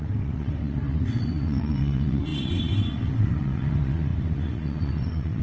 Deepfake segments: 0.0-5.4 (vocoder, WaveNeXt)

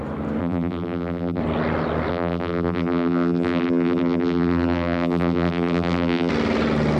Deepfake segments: 0.4-1.4 (vocoder, BigVGAN v2); 2.1-6.3

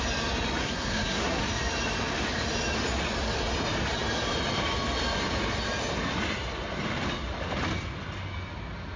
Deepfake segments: 0.6-1.4 (codec, SNAC)

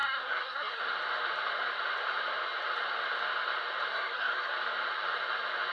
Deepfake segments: 0.0-0.8 (codec, SNAC); 3.9-4.5

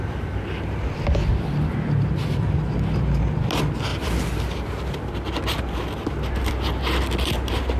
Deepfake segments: none

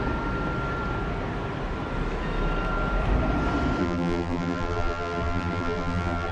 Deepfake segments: 3.8-6.3 (vocoder, BigVGAN v2)

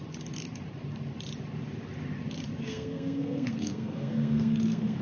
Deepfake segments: 2.6-5.0 (codec, SNAC)